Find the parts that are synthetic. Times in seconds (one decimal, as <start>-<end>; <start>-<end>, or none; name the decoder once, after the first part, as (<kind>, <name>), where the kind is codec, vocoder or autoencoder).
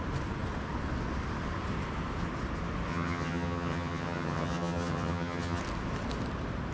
2.9-5.6 (vocoder, HiFi-GAN)